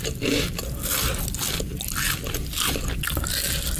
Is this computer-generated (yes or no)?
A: no